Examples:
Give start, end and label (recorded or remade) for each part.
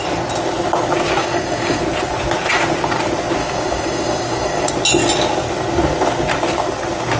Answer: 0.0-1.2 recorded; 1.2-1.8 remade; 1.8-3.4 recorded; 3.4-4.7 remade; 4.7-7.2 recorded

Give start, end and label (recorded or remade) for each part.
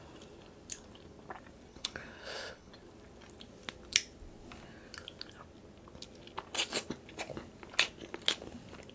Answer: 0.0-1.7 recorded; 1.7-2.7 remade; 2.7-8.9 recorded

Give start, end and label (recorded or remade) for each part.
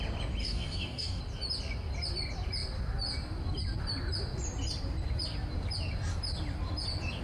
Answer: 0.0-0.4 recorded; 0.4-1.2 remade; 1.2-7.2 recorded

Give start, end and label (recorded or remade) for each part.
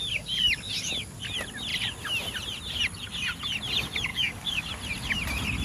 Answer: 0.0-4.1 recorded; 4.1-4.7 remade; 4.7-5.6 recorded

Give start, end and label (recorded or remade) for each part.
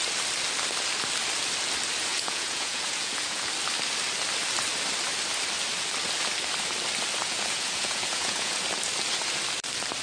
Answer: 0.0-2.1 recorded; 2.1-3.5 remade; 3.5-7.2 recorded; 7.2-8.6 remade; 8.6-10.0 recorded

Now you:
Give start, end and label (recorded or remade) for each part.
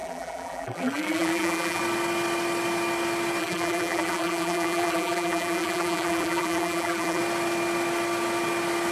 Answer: 0.0-1.8 remade; 1.8-3.4 recorded; 3.4-7.2 remade; 7.2-8.9 recorded